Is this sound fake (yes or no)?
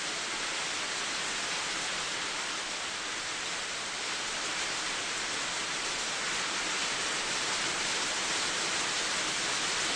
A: no